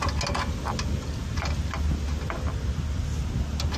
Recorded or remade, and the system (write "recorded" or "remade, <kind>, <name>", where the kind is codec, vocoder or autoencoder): recorded